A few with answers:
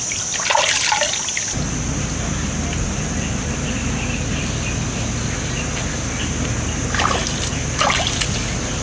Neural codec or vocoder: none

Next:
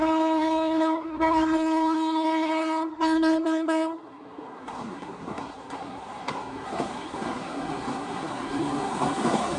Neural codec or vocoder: codec, SNAC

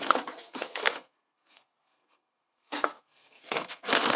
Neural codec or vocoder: codec, SNAC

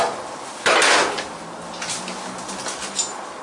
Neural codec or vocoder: none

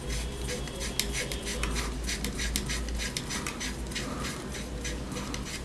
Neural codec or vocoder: none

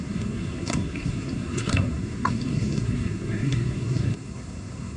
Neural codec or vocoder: codec, SNAC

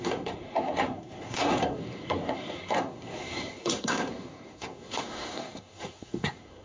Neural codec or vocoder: codec, SNAC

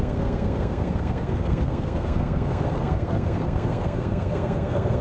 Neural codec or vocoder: codec, SNAC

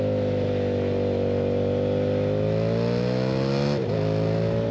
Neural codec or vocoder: none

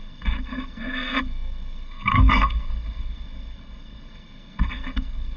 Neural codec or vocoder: codec, SNAC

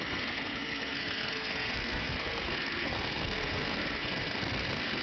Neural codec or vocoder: codec, SNAC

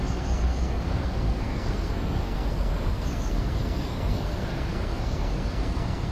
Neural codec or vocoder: codec, SNAC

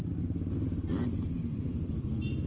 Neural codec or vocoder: none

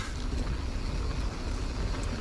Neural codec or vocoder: none